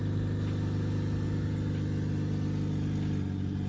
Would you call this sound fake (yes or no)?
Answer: no